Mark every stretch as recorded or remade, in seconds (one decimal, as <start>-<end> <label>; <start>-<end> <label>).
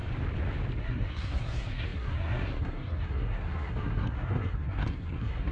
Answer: 0.0-0.8 recorded; 0.8-5.5 remade